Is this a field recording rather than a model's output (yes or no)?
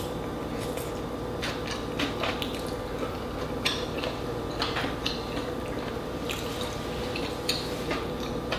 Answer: yes